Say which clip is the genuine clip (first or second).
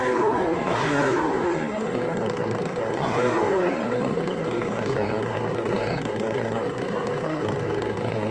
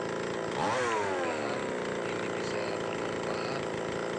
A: second